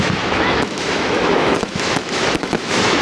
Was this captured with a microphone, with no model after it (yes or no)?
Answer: no